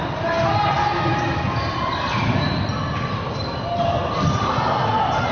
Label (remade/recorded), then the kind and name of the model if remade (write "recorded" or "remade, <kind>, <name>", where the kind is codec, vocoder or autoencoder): recorded